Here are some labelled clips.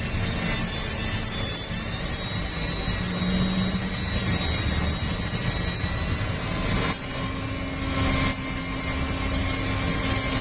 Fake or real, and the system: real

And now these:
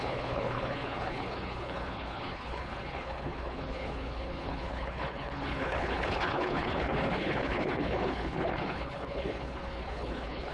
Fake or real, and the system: fake, codec, HILCodec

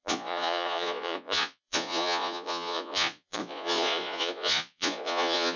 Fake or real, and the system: fake, vocoder, Vocos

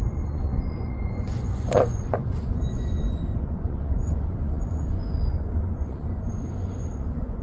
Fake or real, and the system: fake, vocoder, Vocos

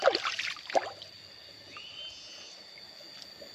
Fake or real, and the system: real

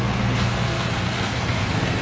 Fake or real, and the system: fake, codec, SNAC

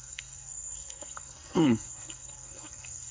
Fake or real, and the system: fake, codec, SNAC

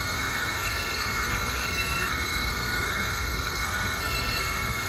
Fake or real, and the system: fake, codec, SNAC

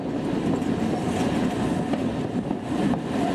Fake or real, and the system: real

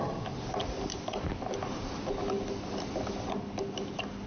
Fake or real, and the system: real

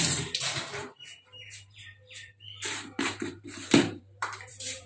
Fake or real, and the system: fake, vocoder, BigVGAN v2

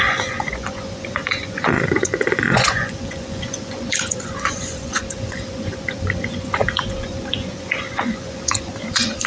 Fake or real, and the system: fake, vocoder, Vocos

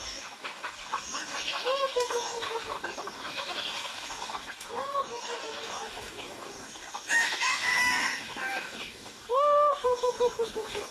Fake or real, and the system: fake, codec, DAC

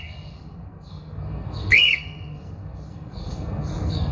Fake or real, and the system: fake, codec, SNAC